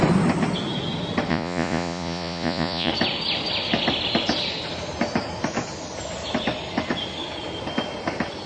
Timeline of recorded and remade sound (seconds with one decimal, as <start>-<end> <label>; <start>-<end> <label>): 0.0-1.3 recorded; 1.3-2.9 remade; 2.9-8.5 recorded